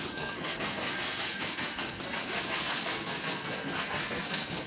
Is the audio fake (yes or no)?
yes